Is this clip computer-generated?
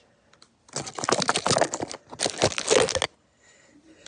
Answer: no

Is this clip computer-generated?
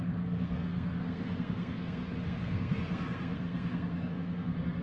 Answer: yes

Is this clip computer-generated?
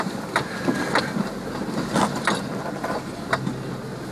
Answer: no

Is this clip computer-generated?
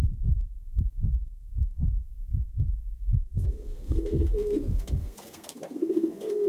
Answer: yes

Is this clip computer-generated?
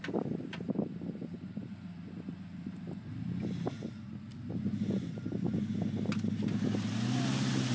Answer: no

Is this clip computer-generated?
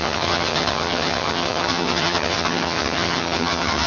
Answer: yes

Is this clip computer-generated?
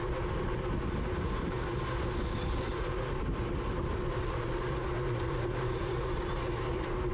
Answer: no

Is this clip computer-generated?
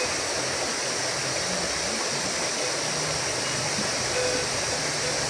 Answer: no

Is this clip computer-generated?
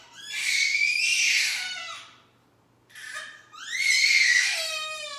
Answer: no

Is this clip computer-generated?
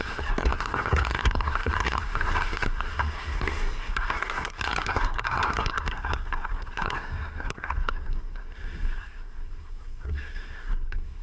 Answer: yes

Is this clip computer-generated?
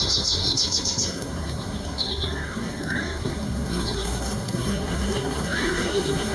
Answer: yes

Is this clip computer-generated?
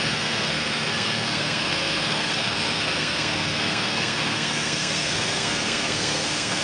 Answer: yes